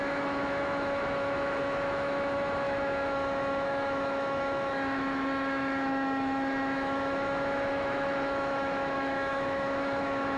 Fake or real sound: fake